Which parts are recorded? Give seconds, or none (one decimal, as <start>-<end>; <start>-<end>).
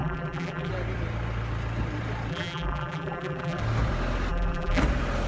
0.7-2.3; 3.6-4.3; 4.8-5.3